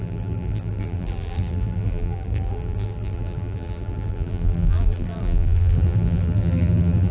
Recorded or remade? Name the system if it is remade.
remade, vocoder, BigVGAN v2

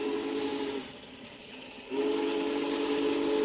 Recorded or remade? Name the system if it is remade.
recorded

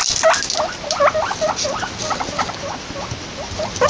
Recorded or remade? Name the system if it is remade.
recorded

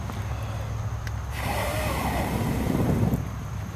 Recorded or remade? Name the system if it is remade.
recorded